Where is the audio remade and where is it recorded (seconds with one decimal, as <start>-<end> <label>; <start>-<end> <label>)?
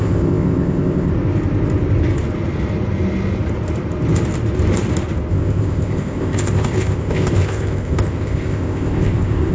0.0-1.1 remade; 1.1-5.3 recorded; 5.3-9.5 remade